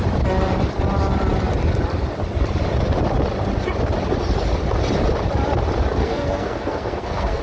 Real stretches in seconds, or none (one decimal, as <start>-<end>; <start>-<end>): 0.0-6.0